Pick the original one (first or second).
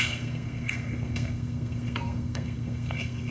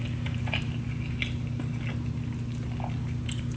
second